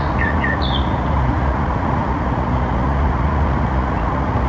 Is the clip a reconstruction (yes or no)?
yes